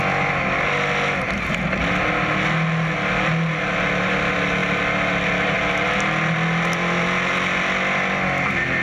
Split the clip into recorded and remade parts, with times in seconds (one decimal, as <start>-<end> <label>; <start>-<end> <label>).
0.0-8.8 recorded